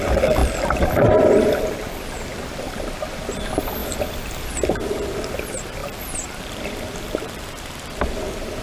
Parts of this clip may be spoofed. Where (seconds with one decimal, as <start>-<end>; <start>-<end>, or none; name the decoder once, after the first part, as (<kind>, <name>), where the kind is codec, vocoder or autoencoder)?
0.0-3.8 (vocoder, BigVGAN v2); 4.7-8.6